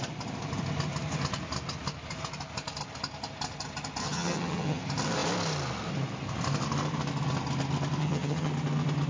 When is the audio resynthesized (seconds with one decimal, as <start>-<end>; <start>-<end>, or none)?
4.0-4.8; 8.0-8.5